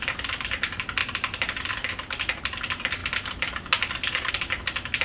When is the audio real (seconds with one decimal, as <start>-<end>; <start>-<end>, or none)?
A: 0.0-5.0